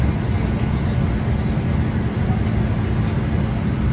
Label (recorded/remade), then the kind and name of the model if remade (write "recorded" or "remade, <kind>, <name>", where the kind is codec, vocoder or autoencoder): recorded